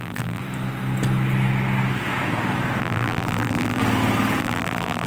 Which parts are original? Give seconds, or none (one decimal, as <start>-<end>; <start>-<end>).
0.4-2.8; 3.8-4.4